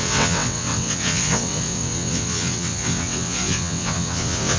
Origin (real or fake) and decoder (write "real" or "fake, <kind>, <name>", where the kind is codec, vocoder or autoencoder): fake, vocoder, WaveNeXt